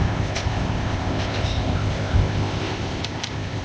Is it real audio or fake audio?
fake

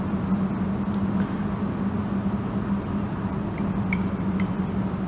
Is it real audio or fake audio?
real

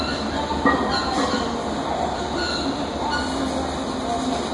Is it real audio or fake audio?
real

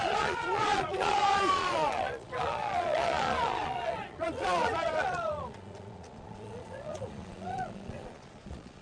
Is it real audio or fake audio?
fake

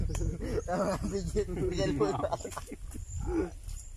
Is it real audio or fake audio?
real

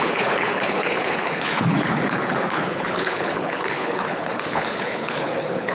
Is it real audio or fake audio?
fake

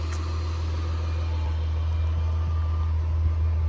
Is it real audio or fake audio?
real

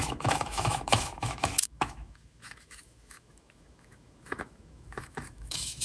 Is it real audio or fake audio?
fake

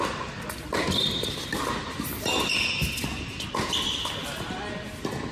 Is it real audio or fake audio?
real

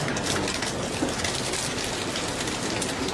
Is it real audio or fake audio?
real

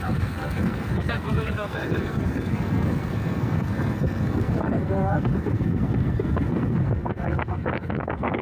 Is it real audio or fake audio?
fake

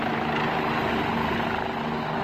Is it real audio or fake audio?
real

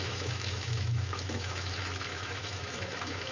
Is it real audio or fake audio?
fake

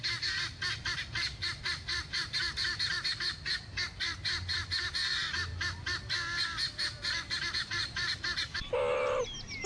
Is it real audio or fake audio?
fake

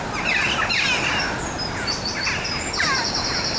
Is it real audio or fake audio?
real